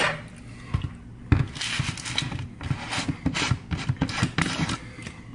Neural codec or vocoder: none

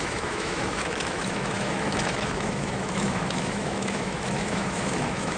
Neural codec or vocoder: autoencoder, DAC-VAE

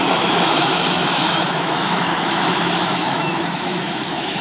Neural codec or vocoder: autoencoder, DAC-VAE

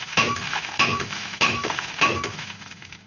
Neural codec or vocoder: autoencoder, DAC-VAE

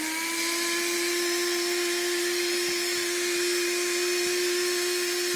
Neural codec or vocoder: none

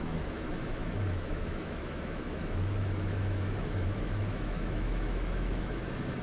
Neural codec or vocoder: autoencoder, DAC-VAE